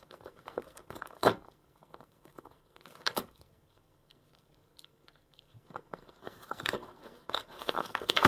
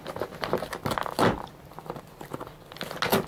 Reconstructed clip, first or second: first